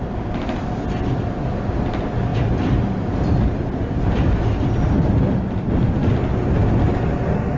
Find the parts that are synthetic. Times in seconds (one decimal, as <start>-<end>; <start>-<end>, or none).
none